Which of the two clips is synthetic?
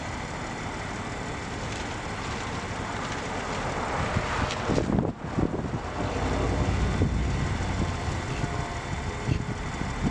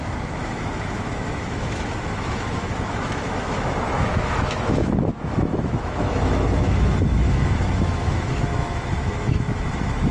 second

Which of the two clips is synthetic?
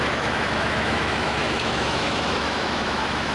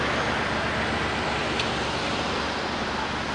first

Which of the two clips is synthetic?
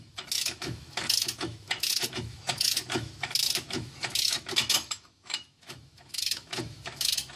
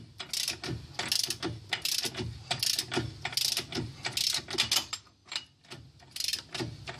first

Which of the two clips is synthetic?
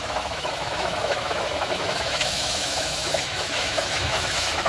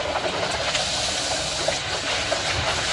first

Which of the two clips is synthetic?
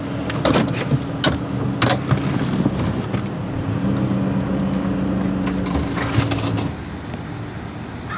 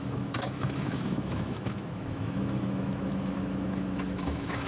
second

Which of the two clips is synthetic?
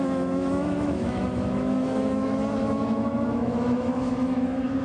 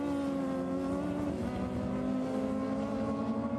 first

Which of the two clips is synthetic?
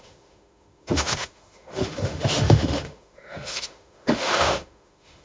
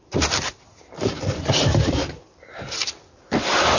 first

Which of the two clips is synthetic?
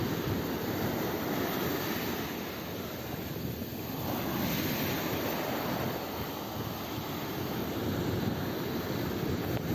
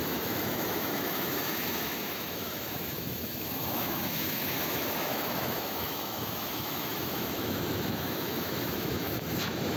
second